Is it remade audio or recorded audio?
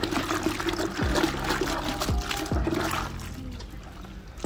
recorded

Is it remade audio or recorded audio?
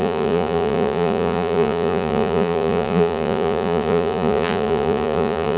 remade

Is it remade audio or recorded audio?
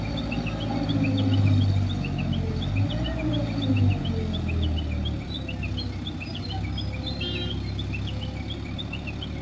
recorded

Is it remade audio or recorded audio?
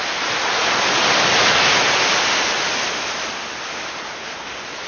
recorded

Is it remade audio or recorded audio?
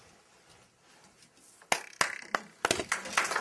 recorded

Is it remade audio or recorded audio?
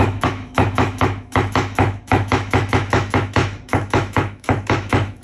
remade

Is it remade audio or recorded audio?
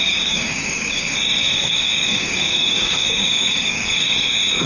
remade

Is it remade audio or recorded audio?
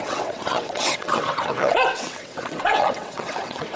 remade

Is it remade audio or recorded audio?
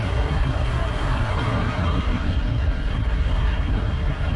remade